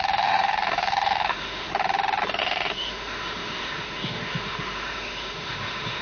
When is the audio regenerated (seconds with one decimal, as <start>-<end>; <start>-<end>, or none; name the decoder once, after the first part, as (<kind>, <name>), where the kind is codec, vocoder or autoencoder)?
0.0-1.7 (autoencoder, DAC-VAE); 2.4-6.0